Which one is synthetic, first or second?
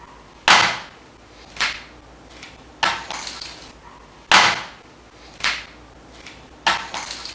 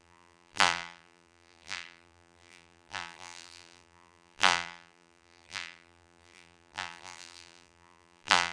second